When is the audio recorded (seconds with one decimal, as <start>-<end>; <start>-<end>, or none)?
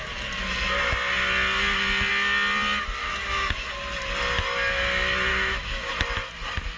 0.0-3.0; 3.7-5.3; 5.9-6.8